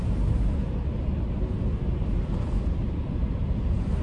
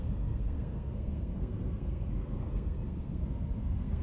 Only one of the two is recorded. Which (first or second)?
first